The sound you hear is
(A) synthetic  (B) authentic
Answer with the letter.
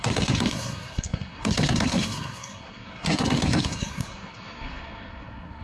A